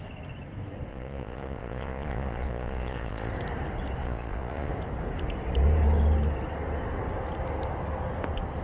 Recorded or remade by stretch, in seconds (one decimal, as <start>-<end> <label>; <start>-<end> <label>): 0.0-0.9 recorded; 0.9-3.3 remade; 3.3-4.0 recorded; 4.0-4.7 remade; 4.7-8.6 recorded